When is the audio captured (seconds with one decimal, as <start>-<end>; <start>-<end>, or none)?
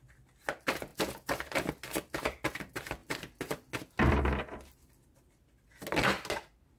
0.0-6.8